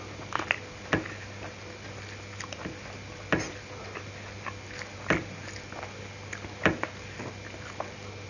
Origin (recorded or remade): recorded